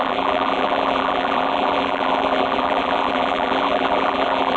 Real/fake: fake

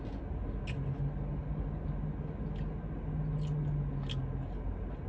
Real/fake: real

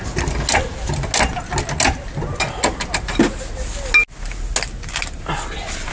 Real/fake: real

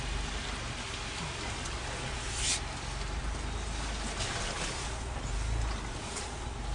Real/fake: real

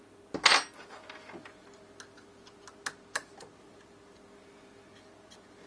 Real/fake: real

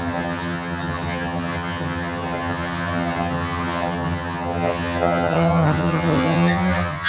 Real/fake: fake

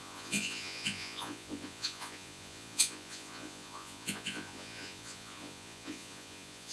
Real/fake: fake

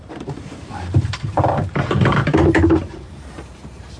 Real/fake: fake